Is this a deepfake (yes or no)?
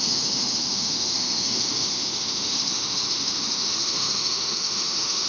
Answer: yes